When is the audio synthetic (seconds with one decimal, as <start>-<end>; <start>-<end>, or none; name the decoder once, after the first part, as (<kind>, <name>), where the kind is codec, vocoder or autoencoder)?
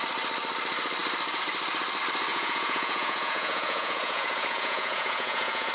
2.3-5.7 (vocoder, Vocos)